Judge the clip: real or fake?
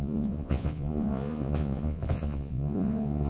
fake